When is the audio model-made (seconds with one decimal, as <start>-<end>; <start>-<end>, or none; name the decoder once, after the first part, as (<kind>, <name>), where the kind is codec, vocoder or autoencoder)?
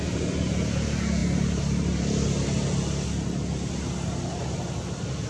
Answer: none